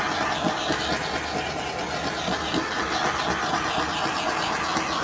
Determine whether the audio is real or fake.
real